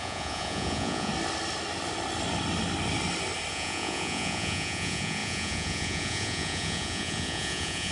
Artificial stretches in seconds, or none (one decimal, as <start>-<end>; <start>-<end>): 0.0-1.1; 3.5-7.9